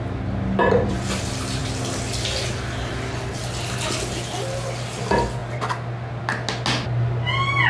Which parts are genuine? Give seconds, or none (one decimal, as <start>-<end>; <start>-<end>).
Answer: 0.0-7.7

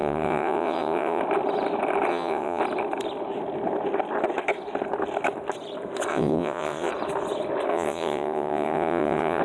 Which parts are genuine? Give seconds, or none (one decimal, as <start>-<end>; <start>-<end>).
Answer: 1.2-2.1; 2.6-6.1; 6.9-7.7